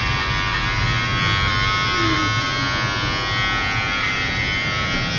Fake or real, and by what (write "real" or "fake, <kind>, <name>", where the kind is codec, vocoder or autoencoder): real